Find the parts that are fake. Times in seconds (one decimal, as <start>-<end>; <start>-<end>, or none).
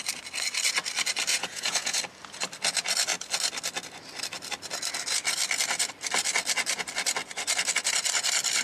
1.3-2.0